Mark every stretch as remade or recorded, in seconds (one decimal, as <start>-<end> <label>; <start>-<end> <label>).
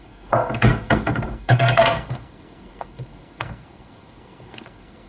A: 0.0-5.1 remade